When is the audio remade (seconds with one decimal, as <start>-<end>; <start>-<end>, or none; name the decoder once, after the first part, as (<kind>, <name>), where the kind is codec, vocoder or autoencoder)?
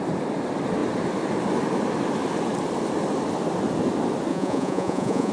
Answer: 4.3-5.3 (vocoder, Vocos)